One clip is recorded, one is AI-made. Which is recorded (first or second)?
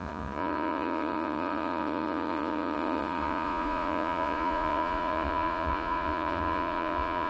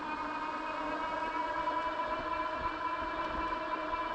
second